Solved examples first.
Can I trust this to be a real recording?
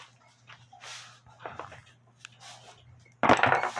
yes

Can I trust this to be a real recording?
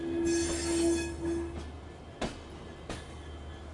yes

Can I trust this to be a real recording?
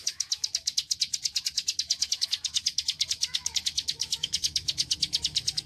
no